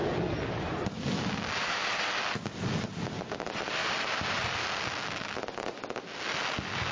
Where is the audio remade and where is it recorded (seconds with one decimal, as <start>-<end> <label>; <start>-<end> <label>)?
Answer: 0.0-6.9 recorded